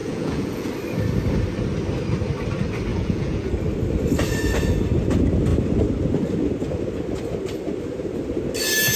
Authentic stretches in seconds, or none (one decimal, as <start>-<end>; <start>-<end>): 0.7-2.9; 3.5-9.0